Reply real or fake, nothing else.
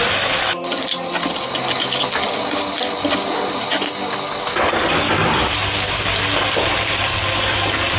real